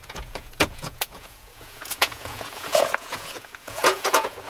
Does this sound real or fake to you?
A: fake